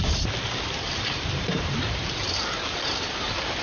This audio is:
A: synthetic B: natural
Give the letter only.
A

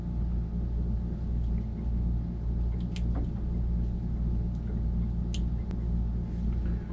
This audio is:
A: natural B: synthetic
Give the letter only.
A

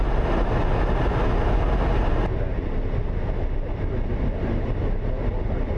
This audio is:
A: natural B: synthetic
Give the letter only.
A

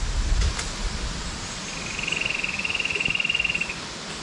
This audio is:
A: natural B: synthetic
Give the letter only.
A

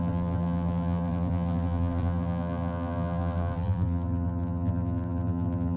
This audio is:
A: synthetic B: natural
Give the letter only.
A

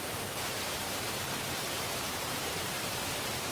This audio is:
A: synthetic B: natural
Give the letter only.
A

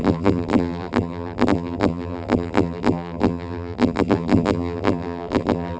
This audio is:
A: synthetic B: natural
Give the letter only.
A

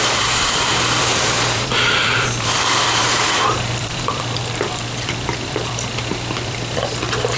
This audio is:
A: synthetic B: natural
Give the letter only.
A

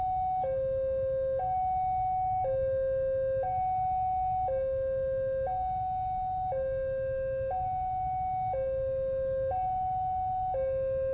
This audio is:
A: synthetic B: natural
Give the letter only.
B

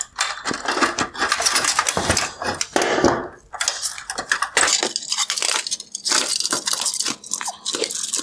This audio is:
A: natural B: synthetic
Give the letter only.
A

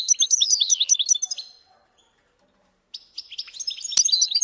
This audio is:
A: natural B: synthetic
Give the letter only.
A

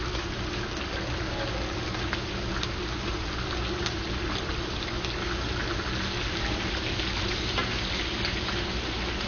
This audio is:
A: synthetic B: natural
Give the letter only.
B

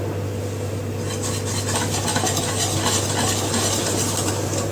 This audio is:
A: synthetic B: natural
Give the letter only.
B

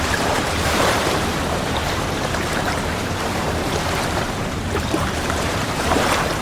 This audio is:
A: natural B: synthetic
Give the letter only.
B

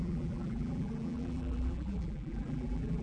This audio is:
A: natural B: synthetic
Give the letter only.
B